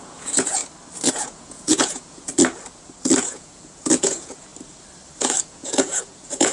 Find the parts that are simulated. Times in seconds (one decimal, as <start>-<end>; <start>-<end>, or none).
0.0-0.6; 1.1-2.3; 3.2-4.5; 5.4-6.5